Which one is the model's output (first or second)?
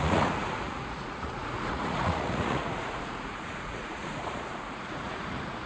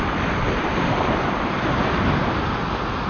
first